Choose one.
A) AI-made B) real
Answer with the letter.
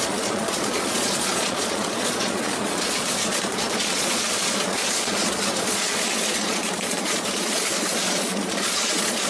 A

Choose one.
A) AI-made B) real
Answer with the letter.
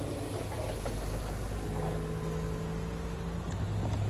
B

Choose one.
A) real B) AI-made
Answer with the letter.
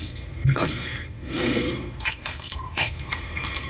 B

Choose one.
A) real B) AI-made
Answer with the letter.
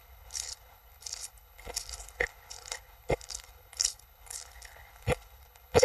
B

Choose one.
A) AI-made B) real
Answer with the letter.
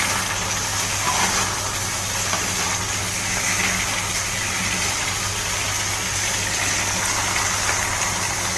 B